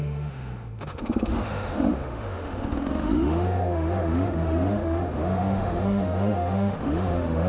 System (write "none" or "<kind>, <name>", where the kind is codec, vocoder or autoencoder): autoencoder, DAC-VAE